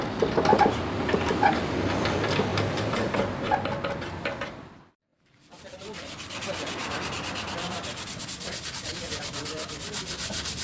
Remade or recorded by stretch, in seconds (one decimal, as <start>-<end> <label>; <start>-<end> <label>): 0.0-2.5 recorded; 2.5-3.5 remade; 3.5-10.6 recorded